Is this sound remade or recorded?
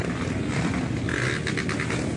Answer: recorded